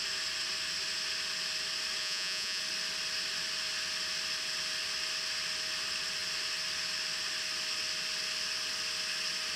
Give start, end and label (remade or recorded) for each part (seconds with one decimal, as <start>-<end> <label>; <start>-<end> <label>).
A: 0.0-2.0 recorded; 2.0-2.6 remade; 2.6-9.6 recorded